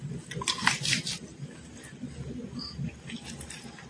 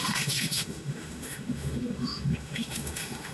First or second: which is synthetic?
second